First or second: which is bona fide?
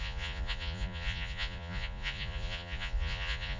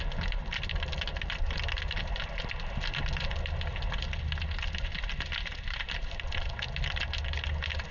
second